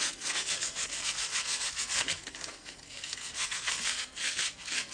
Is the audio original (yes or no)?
no